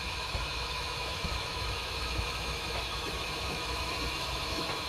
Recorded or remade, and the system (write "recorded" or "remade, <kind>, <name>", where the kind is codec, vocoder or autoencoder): remade, autoencoder, DAC-VAE